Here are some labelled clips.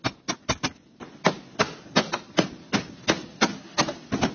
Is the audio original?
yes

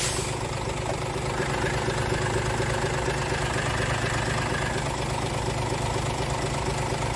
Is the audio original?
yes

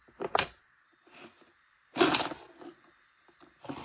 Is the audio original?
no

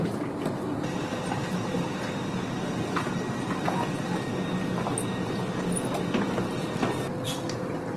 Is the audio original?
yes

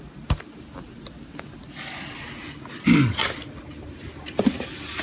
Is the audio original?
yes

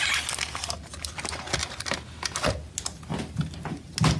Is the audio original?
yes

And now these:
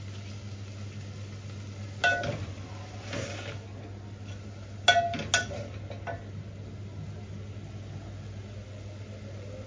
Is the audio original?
yes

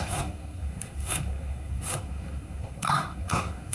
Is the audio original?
no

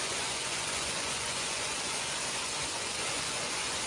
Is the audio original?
no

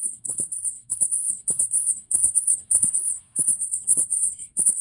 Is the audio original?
no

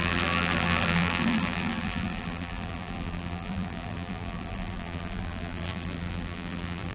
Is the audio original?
no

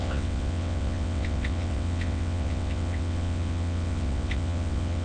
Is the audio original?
no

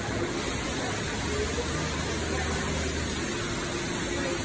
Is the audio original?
yes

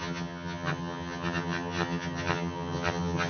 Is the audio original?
no